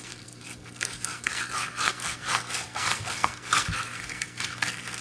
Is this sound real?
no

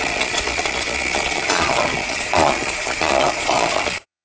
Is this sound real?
no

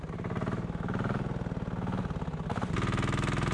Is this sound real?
yes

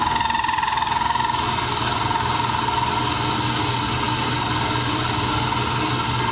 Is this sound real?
yes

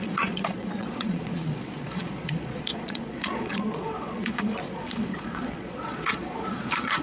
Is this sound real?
no